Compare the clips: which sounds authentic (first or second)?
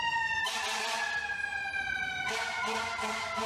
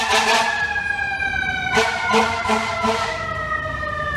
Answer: first